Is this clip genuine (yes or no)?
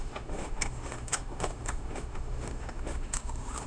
no